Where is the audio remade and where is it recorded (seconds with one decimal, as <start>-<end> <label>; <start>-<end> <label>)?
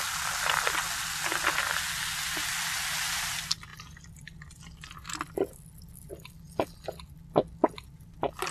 0.0-8.5 recorded